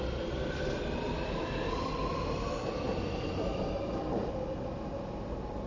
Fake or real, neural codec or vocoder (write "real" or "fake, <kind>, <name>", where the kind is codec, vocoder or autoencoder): real